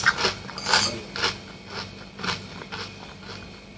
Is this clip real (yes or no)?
yes